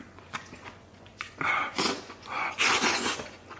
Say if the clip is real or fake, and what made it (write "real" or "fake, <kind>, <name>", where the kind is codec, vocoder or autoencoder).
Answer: fake, vocoder, Vocos